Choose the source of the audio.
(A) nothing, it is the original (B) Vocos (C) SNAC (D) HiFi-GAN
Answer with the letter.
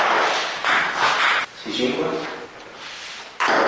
A